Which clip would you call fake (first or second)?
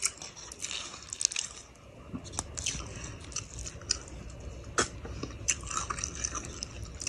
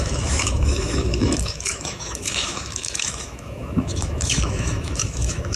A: second